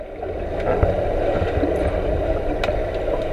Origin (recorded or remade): recorded